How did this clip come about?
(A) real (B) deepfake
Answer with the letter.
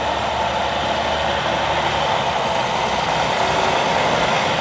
A